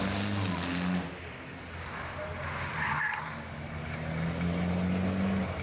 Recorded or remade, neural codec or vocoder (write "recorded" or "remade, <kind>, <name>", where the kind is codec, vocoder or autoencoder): recorded